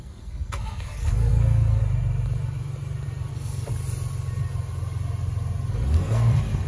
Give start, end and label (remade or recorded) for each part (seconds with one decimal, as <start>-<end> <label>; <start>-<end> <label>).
0.0-1.8 remade; 1.8-3.3 recorded; 3.3-3.8 remade; 3.8-5.7 recorded; 5.7-6.7 remade